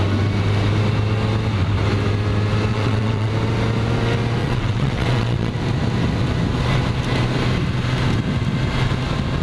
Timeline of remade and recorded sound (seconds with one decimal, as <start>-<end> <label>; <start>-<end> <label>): 0.0-2.7 recorded; 2.7-3.3 remade; 3.3-4.4 recorded; 4.4-5.5 remade; 5.5-9.4 recorded